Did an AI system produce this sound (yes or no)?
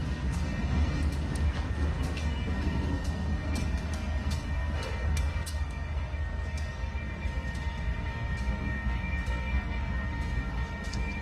yes